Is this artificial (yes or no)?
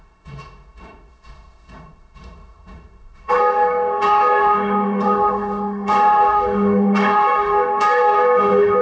yes